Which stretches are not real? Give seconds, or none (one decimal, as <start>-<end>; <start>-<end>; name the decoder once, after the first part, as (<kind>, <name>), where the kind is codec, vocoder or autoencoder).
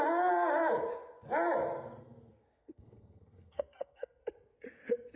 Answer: 2.0-4.2 (codec, SNAC)